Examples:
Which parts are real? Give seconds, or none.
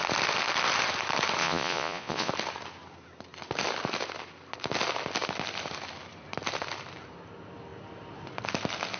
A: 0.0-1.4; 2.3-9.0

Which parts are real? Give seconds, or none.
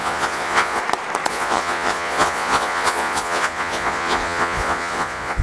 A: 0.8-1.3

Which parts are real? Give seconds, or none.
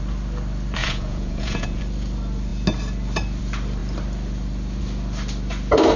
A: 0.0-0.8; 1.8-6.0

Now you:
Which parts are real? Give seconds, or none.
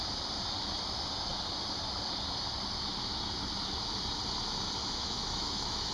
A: 0.0-4.8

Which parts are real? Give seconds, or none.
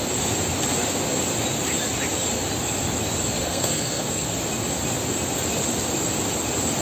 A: 0.0-3.4; 4.4-6.8